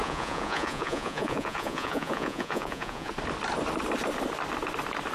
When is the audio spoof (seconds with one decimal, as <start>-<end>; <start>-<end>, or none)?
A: 0.0-3.1